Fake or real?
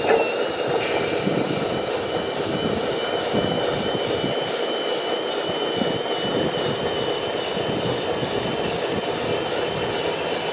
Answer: real